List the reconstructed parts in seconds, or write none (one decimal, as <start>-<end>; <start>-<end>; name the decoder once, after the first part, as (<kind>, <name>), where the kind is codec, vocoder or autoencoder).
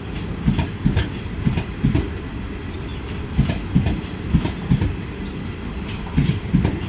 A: 6.2-6.9 (vocoder, BigVGAN v2)